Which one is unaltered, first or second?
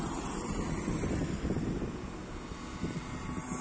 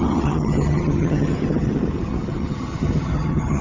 first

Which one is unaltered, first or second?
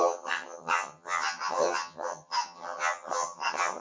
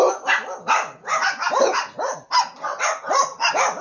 second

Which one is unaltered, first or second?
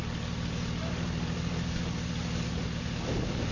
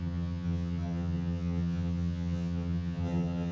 first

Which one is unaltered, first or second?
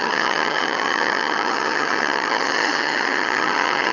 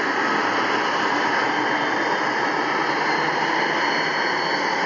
second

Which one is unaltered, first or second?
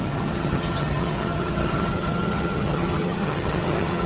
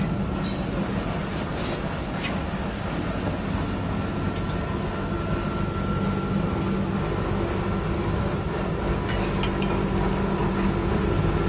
second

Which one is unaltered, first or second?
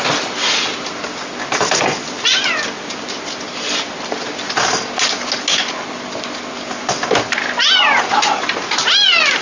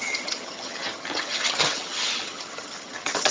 first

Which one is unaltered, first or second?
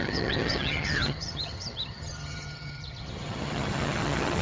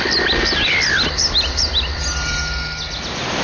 second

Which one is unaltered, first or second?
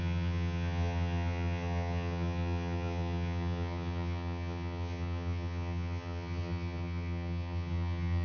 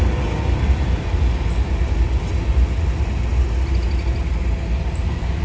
second